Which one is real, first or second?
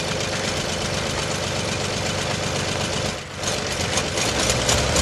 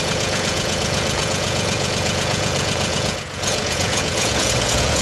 first